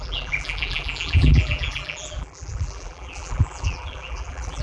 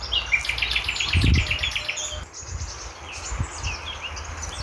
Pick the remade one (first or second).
first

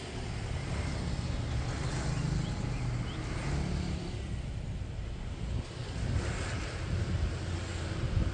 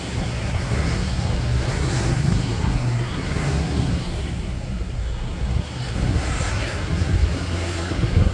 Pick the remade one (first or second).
second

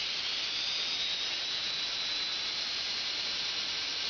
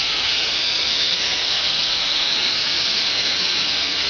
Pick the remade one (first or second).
second